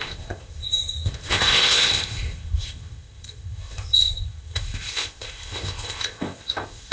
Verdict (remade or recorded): remade